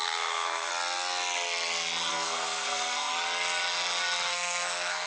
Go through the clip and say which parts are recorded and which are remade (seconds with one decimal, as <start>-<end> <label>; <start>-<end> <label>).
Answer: 0.0-0.7 remade; 0.7-2.1 recorded; 2.1-3.1 remade; 3.1-4.3 recorded; 4.3-5.1 remade